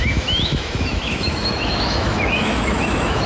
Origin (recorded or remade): remade